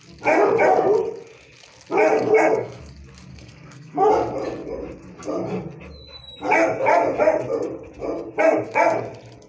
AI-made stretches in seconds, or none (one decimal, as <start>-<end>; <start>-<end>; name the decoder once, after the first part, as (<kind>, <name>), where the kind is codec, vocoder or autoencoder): 2.1-2.8 (codec, SNAC); 3.3-4.1